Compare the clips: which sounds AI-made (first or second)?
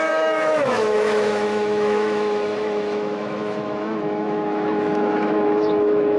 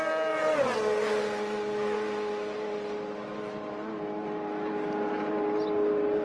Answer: first